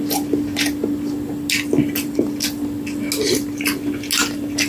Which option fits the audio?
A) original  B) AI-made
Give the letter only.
A